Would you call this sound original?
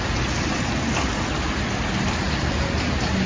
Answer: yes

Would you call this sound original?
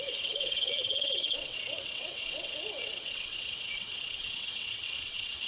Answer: no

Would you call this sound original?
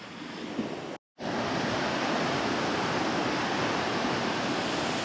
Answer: yes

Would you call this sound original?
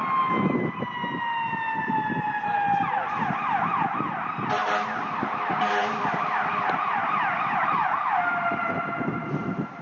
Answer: yes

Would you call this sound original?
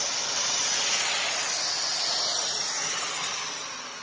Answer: yes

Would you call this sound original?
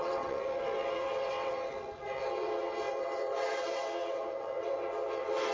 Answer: no